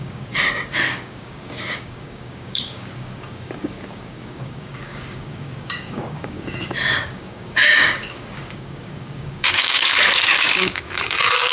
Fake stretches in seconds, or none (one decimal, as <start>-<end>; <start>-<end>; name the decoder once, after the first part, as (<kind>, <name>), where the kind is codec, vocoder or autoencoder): 0.0-11.5 (codec, DAC)